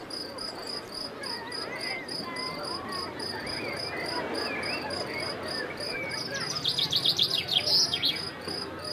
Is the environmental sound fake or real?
real